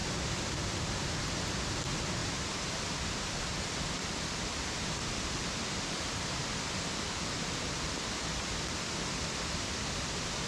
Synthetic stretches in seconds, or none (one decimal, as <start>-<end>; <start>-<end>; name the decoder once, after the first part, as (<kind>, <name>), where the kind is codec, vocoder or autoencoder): none